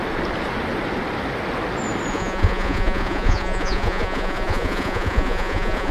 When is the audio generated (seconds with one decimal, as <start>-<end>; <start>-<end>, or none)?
2.1-5.9